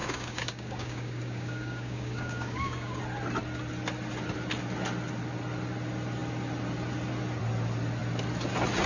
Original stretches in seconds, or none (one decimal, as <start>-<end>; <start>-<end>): 3.0-8.9

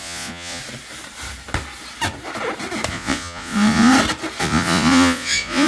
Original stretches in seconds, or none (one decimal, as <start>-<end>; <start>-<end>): 0.6-2.9; 3.9-4.4

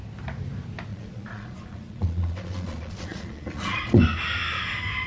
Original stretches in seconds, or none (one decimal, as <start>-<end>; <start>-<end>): 0.0-0.9; 4.0-5.1

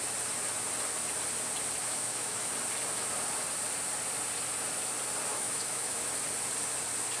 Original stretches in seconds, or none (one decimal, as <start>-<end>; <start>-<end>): 0.0-1.8; 2.5-5.3; 6.1-7.2

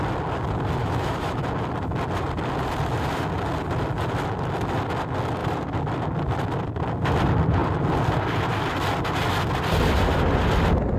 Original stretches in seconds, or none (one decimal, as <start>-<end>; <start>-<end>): 0.0-0.8; 1.4-11.0

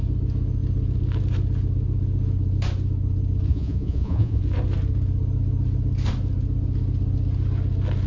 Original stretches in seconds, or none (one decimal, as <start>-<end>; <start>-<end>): 0.0-3.5; 4.4-8.1

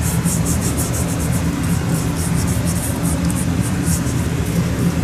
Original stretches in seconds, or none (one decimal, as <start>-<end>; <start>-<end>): 0.6-3.6

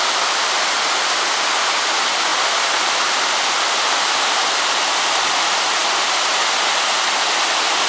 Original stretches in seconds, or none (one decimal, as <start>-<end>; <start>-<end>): 5.8-7.9